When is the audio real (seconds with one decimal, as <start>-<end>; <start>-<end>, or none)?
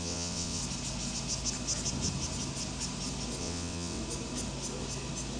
0.6-3.4; 4.0-5.4